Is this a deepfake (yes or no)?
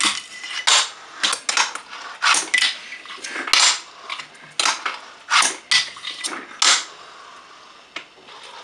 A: no